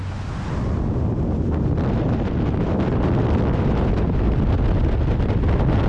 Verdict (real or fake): real